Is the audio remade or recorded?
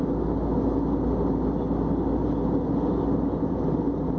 recorded